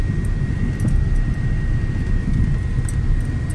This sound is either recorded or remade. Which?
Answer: recorded